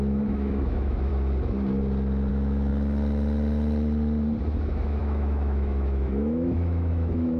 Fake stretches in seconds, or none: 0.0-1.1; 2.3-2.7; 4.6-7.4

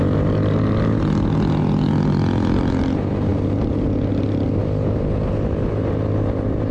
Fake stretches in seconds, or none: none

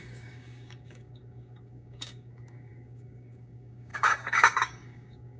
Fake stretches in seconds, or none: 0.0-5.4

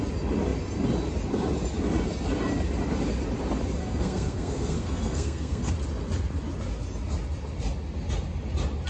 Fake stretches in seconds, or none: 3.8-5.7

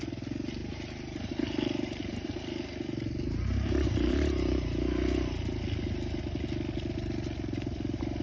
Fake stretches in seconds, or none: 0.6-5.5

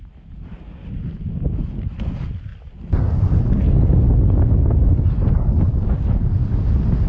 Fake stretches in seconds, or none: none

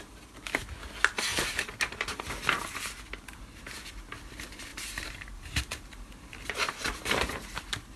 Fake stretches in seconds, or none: 1.3-2.2; 4.7-8.0

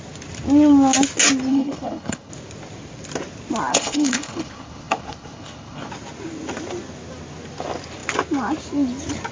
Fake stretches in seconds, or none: 1.5-2.3; 3.7-5.9